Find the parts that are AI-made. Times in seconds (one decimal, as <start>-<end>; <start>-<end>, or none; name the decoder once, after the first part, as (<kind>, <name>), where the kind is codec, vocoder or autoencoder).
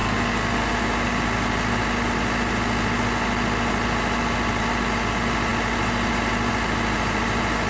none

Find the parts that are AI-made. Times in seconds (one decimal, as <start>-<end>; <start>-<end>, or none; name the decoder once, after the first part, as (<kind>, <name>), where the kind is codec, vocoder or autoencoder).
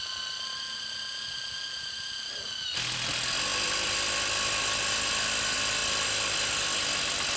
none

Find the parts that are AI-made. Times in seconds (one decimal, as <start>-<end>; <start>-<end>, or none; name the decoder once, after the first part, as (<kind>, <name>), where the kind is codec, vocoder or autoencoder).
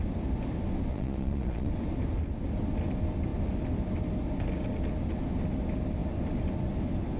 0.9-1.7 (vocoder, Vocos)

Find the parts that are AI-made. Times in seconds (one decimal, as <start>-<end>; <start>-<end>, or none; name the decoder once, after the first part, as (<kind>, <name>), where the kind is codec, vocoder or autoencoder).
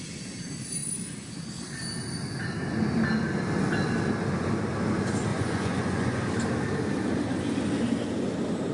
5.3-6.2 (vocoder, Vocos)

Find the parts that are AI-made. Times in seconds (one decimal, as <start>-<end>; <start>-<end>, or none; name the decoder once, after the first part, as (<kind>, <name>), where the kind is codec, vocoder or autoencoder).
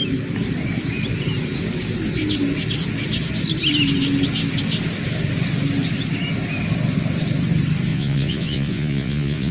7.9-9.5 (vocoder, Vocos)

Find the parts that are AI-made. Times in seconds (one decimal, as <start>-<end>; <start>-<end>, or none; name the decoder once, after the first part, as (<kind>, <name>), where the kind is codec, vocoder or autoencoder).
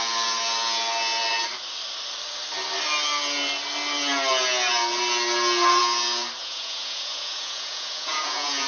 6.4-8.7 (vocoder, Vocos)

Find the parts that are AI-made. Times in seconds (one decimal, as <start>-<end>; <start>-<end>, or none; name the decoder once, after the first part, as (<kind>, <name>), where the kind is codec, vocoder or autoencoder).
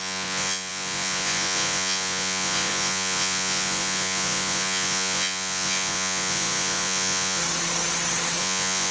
0.0-7.4 (vocoder, Vocos); 8.4-8.9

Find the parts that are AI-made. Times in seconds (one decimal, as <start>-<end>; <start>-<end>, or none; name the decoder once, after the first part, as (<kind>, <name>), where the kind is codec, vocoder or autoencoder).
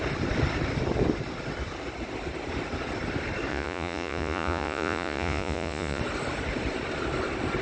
3.5-6.0 (vocoder, Vocos)